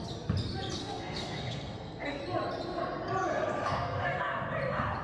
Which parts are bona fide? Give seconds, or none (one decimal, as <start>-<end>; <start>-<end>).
0.0-0.8; 2.2-3.3; 4.2-5.0